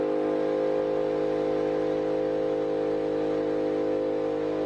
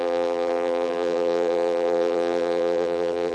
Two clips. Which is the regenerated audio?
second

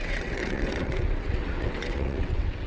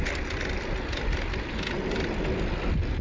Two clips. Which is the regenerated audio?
first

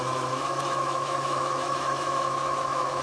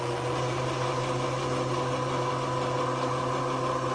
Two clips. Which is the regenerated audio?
first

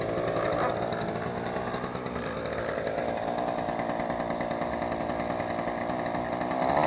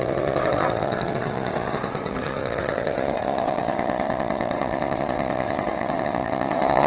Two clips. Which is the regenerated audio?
second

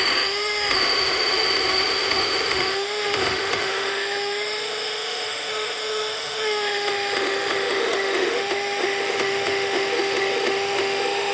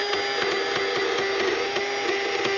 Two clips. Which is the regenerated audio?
first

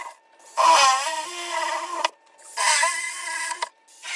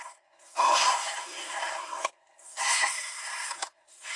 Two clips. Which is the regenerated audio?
second